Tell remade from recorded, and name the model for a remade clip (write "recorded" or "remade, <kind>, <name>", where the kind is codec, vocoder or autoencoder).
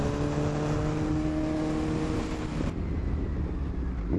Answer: recorded